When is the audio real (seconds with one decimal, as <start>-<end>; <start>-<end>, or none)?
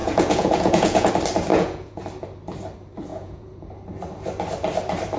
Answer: 1.1-1.5; 2.0-3.1; 3.7-5.2